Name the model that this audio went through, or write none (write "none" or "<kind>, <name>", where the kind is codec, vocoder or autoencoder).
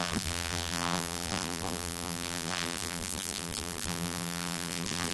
vocoder, BigVGAN v2